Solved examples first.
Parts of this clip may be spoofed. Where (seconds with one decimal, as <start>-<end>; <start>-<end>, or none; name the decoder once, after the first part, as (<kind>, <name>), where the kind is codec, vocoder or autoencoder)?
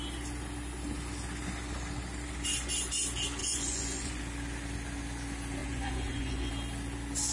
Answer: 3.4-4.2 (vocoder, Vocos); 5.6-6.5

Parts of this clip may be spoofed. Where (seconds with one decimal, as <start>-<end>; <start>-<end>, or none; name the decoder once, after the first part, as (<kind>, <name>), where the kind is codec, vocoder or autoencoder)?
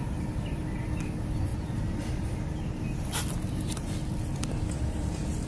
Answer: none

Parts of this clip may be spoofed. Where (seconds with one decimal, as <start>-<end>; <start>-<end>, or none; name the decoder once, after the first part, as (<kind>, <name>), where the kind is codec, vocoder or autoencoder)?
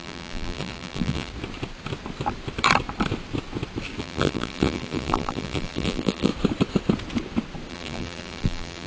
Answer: 0.0-1.3 (vocoder, BigVGAN v2); 4.0-6.3; 7.7-8.9